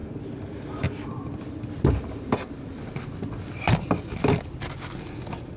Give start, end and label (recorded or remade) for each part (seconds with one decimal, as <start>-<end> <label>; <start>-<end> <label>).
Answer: 0.0-5.6 recorded